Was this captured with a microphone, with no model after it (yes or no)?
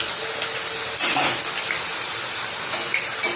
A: yes